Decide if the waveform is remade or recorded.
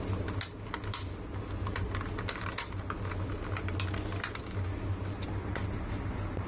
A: recorded